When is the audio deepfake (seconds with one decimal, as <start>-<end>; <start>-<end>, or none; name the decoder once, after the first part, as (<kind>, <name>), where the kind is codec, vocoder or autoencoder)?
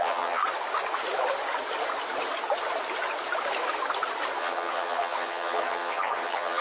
0.0-0.4 (vocoder, HiFi-GAN); 4.4-6.6